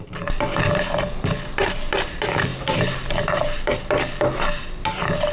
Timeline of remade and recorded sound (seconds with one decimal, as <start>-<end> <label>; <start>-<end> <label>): 0.0-5.3 recorded